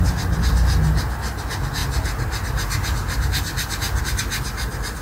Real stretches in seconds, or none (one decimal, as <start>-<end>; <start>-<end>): 0.0-5.0